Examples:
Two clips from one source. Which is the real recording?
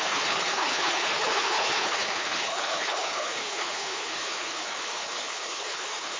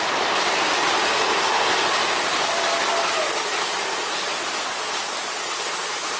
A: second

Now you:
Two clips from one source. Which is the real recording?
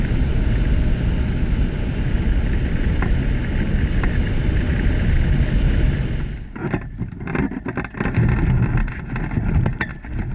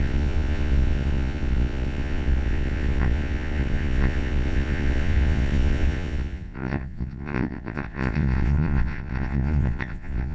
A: first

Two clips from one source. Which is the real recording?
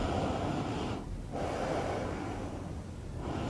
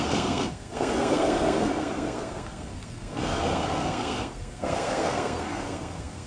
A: first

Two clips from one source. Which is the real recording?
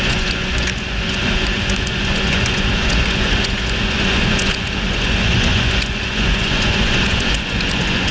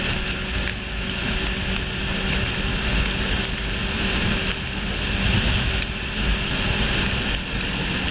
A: second